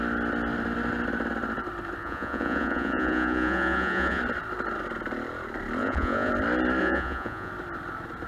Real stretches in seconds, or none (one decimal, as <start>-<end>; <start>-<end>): 0.0-2.0; 4.2-5.8; 6.3-6.8; 7.5-8.3